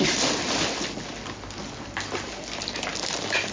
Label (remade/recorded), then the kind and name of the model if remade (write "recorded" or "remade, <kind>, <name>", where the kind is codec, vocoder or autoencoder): recorded